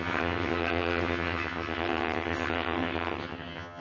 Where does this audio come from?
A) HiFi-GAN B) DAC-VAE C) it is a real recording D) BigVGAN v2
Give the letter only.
A